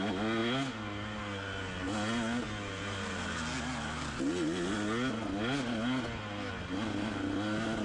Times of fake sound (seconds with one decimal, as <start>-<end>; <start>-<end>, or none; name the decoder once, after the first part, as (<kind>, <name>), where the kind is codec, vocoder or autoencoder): none